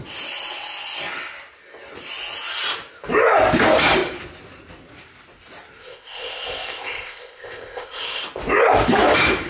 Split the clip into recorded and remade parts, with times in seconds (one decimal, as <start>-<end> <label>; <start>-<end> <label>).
0.0-5.8 recorded; 5.8-8.2 remade; 8.2-9.5 recorded